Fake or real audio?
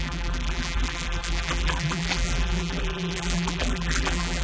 fake